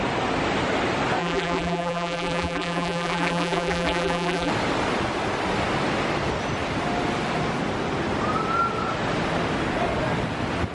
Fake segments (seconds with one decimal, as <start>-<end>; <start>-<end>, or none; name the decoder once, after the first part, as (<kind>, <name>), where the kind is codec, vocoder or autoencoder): 1.2-4.5 (vocoder, BigVGAN v2)